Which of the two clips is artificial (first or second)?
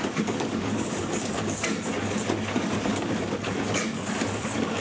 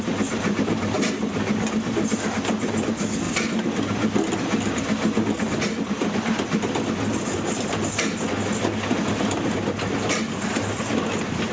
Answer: first